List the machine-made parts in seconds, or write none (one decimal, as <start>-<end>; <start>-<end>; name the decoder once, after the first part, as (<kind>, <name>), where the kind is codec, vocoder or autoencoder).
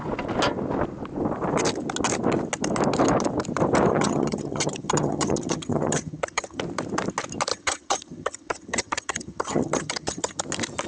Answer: 3.9-6.6 (vocoder, HiFi-GAN); 7.5-10.4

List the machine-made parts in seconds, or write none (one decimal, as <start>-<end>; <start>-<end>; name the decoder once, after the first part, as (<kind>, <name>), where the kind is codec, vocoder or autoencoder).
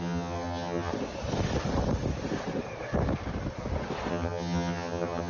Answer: 0.0-0.9 (vocoder, HiFi-GAN); 4.1-5.3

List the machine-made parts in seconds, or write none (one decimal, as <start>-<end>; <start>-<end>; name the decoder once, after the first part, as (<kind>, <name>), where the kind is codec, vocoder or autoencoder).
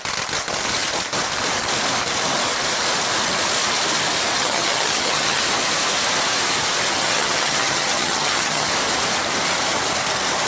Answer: 4.4-5.4 (vocoder, HiFi-GAN); 7.0-8.7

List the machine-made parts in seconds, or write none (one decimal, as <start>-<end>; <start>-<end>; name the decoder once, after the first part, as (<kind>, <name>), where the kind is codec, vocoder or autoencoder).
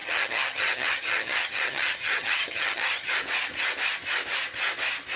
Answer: 0.0-3.1 (vocoder, HiFi-GAN)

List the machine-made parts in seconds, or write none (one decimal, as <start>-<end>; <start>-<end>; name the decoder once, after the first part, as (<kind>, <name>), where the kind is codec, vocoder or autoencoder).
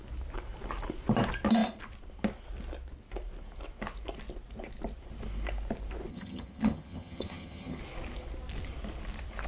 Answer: 6.1-7.8 (vocoder, HiFi-GAN)